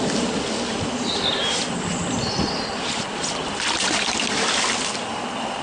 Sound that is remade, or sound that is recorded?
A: recorded